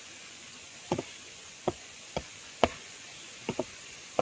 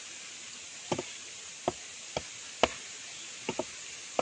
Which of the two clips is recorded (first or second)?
second